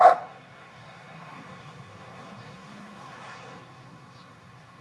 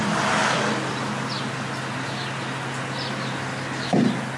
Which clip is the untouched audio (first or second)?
second